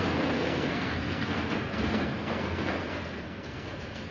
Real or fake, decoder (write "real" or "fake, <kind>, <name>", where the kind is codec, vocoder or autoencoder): fake, codec, SNAC